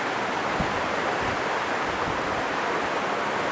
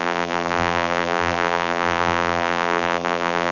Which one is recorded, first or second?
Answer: first